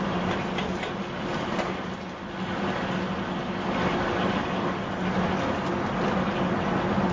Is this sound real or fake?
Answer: real